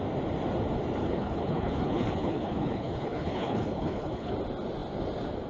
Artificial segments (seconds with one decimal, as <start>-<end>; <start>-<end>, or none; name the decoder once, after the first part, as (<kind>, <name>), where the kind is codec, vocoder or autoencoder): 1.0-4.3 (codec, HILCodec)

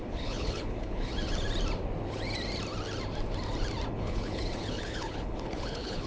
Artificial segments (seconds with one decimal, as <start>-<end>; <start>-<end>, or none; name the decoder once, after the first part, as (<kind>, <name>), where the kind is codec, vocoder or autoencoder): 0.0-1.1 (codec, HILCodec); 3.9-6.1

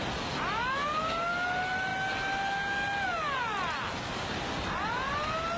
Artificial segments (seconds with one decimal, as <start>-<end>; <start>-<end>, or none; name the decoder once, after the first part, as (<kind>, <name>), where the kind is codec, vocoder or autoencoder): none